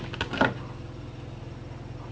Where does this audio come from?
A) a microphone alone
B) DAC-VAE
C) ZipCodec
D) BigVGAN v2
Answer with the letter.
A